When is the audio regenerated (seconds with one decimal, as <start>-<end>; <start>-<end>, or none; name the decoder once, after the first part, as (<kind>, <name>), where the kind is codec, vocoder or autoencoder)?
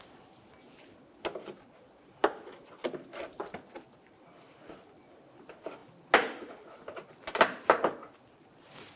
none